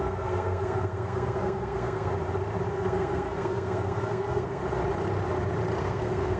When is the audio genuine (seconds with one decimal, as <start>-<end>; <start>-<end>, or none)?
2.1-2.7; 4.6-5.8